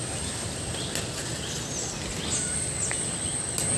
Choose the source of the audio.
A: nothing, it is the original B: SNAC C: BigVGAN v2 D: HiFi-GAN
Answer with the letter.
A